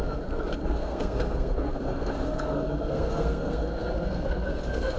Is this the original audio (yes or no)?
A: no